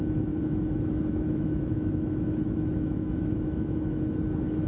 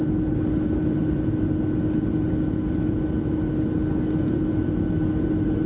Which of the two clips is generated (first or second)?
first